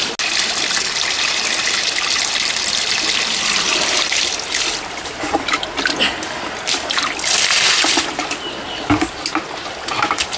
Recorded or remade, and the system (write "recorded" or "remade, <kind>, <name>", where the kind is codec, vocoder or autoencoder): recorded